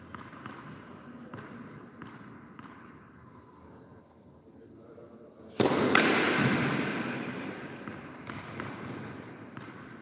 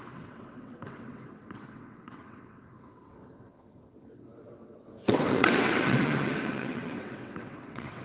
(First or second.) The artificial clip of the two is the second